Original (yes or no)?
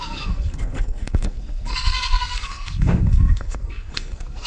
no